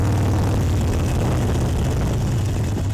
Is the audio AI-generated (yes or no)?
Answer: no